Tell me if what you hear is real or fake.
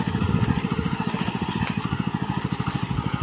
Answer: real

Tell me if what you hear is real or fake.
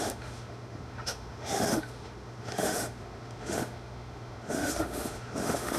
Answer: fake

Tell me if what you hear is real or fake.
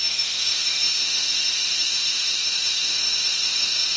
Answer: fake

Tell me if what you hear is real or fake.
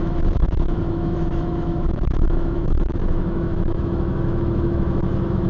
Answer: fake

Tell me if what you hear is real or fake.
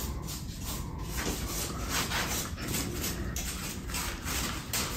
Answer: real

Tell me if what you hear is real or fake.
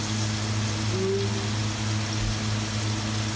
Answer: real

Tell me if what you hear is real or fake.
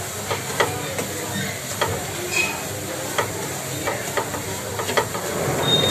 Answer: real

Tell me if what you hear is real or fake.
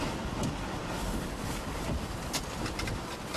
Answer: real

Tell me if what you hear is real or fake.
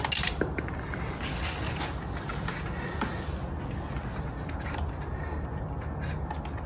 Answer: real